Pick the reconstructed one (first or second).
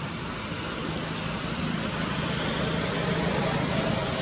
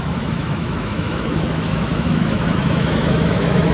second